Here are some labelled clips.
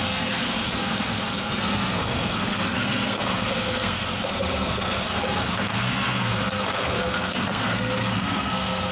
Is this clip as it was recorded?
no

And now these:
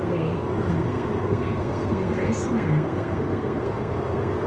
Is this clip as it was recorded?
no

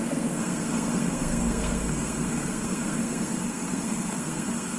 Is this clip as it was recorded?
no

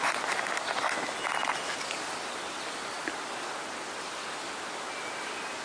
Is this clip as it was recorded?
yes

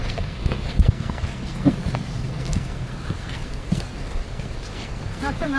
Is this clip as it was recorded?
no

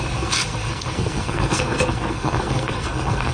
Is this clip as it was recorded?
no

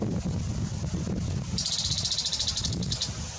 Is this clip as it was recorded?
yes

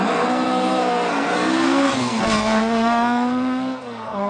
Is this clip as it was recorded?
no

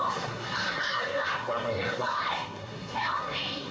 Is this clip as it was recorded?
no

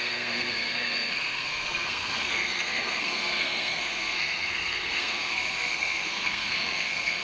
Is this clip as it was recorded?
no